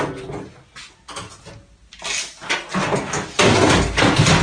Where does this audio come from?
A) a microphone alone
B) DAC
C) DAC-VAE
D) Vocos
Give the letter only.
A